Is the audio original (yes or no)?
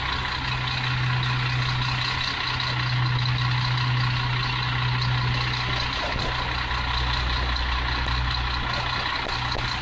yes